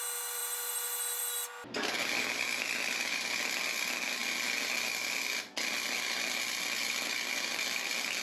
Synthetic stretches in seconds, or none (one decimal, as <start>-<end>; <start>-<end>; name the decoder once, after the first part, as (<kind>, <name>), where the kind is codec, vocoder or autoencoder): none